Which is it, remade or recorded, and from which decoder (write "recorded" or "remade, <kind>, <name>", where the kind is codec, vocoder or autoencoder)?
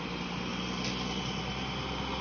recorded